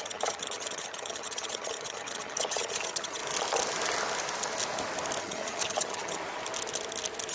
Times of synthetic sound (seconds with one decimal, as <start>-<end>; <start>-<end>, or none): 0.0-3.2; 5.2-6.2

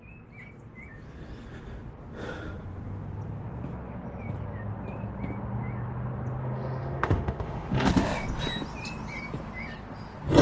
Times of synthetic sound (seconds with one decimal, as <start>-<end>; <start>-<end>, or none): 6.4-7.9

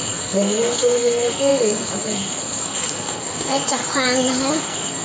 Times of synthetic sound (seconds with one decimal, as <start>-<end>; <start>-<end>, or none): 0.0-3.8; 4.5-5.0

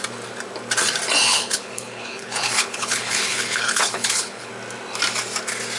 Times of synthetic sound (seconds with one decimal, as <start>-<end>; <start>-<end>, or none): 1.3-4.5

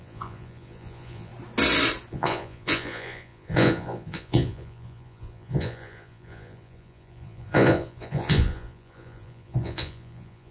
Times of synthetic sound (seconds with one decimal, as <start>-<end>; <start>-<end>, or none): 0.0-1.3; 2.1-10.5